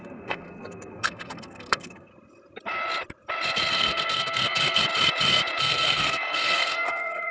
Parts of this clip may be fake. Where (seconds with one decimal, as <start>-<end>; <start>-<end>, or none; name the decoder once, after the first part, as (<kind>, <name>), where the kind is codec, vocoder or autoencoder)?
0.0-2.1 (codec, SNAC); 3.7-4.8; 5.6-7.3